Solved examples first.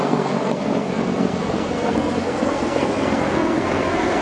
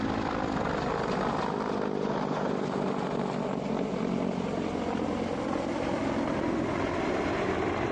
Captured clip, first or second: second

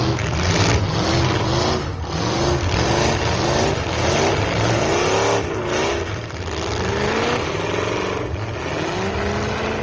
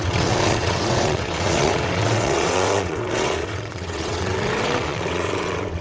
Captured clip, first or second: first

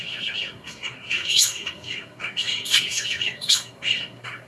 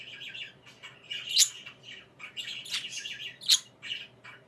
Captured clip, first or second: second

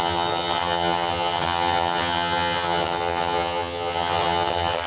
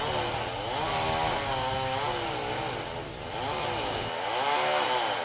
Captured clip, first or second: second